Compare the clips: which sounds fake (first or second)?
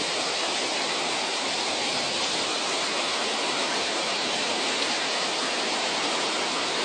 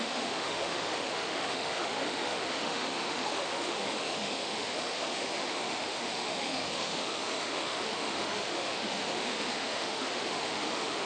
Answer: second